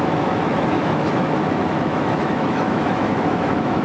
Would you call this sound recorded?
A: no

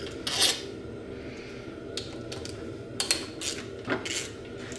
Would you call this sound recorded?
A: yes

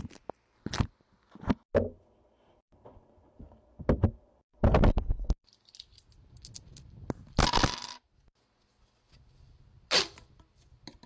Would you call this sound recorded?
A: yes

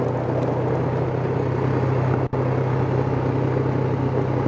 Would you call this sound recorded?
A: yes